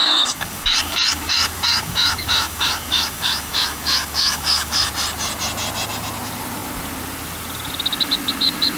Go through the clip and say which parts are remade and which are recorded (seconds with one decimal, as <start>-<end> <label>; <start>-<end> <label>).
0.0-4.9 remade; 4.9-8.8 recorded